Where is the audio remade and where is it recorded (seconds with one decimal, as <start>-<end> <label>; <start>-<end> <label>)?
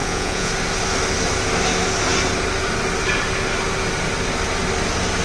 0.0-0.5 remade; 0.5-5.2 recorded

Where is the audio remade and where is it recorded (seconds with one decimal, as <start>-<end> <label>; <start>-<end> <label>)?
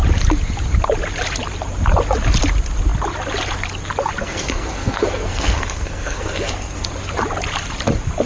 0.0-4.2 recorded; 4.2-6.9 remade; 6.9-8.3 recorded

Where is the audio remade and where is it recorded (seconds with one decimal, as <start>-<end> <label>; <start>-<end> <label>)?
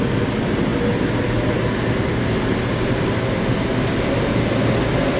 0.0-5.2 recorded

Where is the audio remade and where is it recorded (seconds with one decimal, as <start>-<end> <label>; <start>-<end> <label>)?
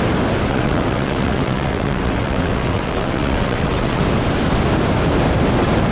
0.0-0.5 recorded; 0.5-4.0 remade; 4.0-5.9 recorded